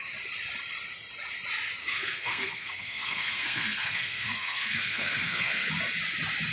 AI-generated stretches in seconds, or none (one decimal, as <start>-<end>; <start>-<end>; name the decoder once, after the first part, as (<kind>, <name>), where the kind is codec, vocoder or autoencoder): 1.8-5.7 (codec, SNAC)